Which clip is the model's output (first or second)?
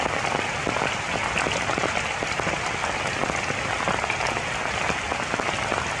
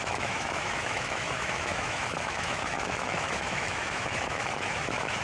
second